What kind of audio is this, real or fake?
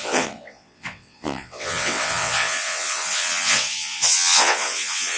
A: fake